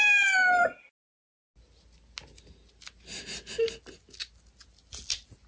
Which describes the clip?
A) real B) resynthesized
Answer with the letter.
A